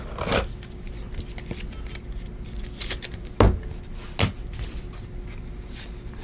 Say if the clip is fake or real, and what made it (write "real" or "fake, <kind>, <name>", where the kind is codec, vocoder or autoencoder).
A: real